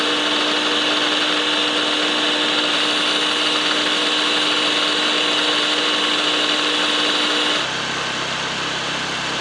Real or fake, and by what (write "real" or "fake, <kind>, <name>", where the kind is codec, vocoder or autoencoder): real